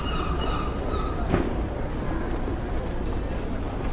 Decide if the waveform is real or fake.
real